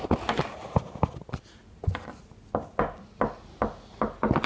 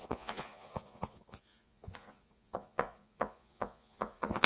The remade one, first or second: second